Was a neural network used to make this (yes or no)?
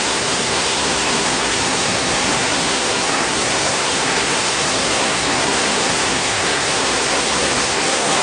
yes